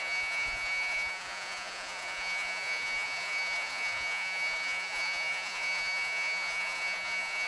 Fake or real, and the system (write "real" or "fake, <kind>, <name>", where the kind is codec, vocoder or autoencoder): fake, vocoder, Vocos